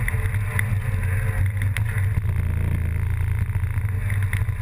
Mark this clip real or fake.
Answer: real